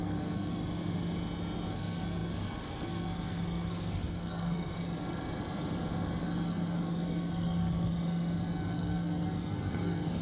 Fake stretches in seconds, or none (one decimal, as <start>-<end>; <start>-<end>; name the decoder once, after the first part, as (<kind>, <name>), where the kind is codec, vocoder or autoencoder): 0.0-0.6 (codec, SNAC); 1.7-4.7; 6.2-7.9; 8.7-10.2